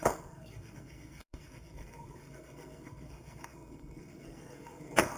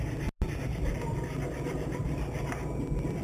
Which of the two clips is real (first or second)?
second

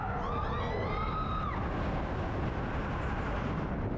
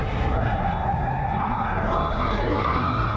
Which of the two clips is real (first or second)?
first